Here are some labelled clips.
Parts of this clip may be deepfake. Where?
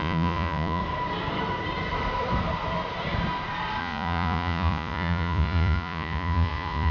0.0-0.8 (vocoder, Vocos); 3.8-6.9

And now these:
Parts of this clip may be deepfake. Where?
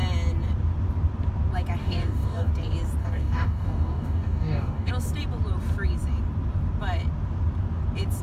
1.8-2.5 (codec, DAC); 3.0-4.9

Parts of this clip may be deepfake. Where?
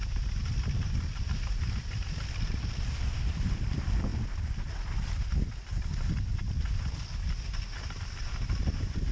0.0-5.7 (vocoder, BigVGAN v2); 8.6-9.1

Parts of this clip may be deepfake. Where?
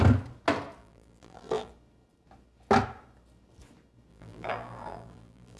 0.8-1.7 (vocoder, BigVGAN v2); 4.1-5.6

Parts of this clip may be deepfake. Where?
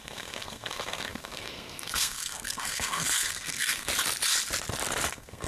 0.0-3.9 (codec, SNAC); 5.1-5.5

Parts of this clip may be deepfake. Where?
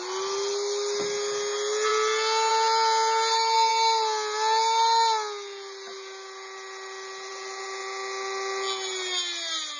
none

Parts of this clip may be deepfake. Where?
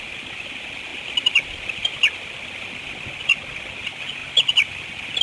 none